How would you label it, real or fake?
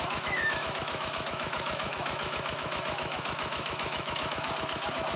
fake